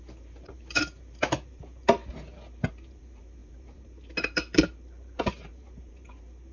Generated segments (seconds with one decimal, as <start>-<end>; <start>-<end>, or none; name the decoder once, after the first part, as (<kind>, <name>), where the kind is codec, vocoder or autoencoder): 0.0-2.0 (vocoder, BigVGAN v2); 2.7-6.5